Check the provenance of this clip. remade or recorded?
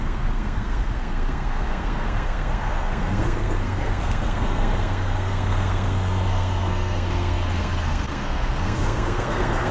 remade